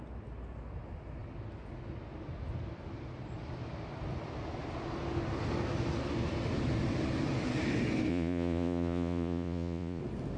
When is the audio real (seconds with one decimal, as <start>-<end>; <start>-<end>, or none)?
0.0-8.1; 10.0-10.4